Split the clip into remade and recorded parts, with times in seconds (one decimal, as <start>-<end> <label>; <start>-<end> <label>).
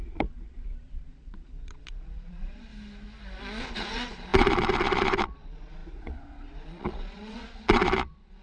0.0-2.7 remade; 2.7-3.6 recorded; 3.6-8.4 remade